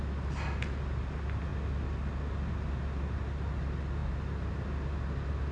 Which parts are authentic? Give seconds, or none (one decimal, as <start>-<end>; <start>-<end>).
0.0-5.5